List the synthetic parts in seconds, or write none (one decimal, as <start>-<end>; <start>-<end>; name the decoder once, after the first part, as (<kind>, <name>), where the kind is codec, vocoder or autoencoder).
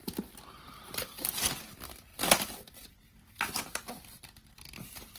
0.0-1.2 (vocoder, BigVGAN v2); 2.1-3.9